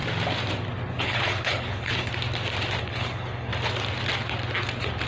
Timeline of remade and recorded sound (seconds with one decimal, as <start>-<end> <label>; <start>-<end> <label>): 0.0-0.9 recorded; 0.9-2.1 remade; 2.1-2.8 recorded; 2.8-3.5 remade; 3.5-5.1 recorded